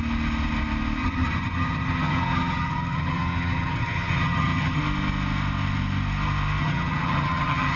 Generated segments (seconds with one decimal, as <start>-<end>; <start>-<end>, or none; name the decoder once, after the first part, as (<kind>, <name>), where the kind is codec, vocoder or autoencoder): 1.0-4.8 (vocoder, HiFi-GAN); 6.6-7.8